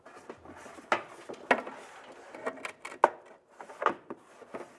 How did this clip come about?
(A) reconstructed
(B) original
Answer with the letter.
B